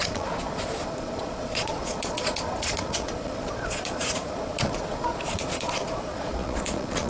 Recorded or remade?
remade